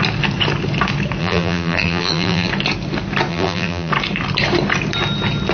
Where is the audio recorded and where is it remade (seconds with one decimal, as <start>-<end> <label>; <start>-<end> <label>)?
0.0-1.2 recorded; 1.2-2.5 remade; 2.5-3.3 recorded; 3.3-3.9 remade; 3.9-5.5 recorded